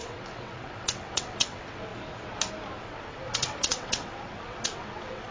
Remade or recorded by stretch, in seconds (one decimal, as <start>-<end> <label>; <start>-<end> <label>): 0.0-1.9 remade; 1.9-2.8 recorded; 2.8-5.3 remade